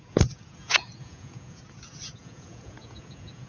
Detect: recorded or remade remade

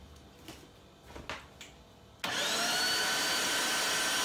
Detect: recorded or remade recorded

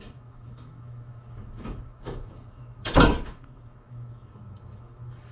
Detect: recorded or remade remade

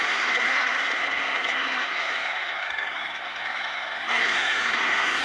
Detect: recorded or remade remade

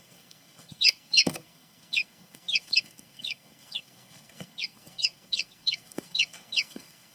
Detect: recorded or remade remade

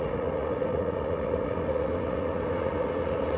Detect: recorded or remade remade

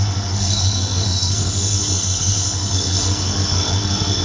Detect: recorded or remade remade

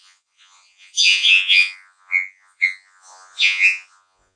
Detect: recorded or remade remade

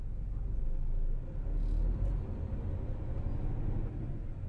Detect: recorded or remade recorded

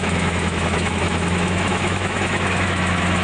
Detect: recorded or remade remade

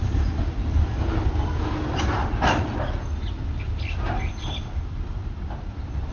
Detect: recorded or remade recorded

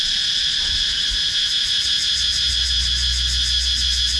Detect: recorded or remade recorded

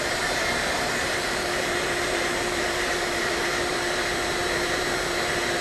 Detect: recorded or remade remade